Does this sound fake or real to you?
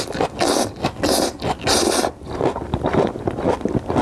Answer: real